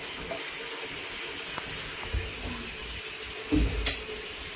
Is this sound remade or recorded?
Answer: recorded